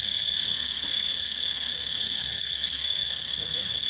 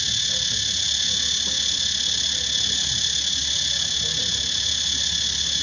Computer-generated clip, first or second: first